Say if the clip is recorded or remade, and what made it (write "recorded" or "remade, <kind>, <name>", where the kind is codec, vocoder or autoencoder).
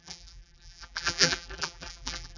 remade, vocoder, BigVGAN v2